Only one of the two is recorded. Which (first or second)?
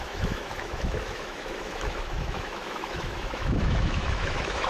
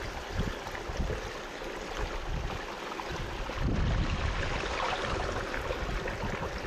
second